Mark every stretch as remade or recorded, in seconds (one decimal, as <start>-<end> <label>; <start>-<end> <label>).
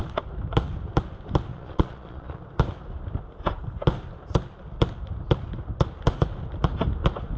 0.0-1.5 recorded; 1.5-2.4 remade; 2.4-7.4 recorded